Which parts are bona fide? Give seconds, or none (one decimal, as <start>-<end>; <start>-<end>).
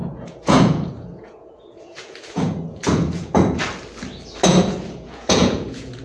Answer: 3.6-4.5